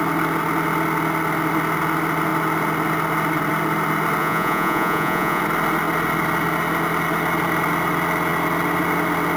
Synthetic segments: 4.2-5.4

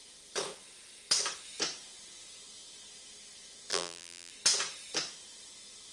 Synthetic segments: 3.7-4.3

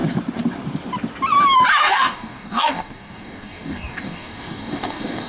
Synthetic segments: 1.8-5.3